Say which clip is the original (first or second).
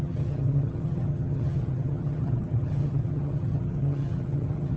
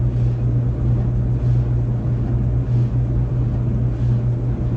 second